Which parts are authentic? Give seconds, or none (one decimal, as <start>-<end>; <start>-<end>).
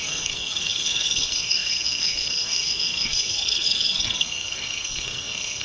none